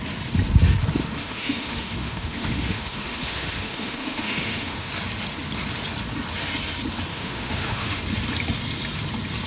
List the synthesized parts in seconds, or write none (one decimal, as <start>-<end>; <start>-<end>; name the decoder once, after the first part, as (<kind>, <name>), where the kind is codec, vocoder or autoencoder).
1.0-4.9 (autoencoder, DAC-VAE); 7.1-8.0